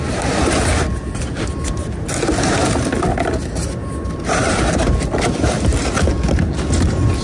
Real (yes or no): yes